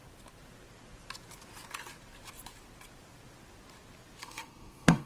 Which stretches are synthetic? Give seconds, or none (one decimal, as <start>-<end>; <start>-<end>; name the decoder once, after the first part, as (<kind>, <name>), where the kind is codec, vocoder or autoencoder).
4.2-5.1 (codec, SNAC)